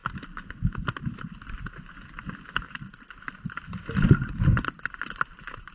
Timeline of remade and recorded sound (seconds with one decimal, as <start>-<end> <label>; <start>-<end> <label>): 0.0-5.7 recorded